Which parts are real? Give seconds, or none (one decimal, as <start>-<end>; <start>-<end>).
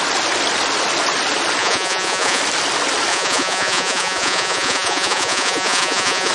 0.0-1.6; 2.4-3.1